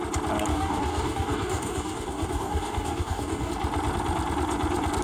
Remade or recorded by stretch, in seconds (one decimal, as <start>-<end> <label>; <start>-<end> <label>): 0.0-0.5 recorded; 0.5-3.5 remade; 3.5-5.0 recorded